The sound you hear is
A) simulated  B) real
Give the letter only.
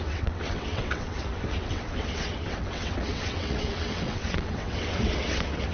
A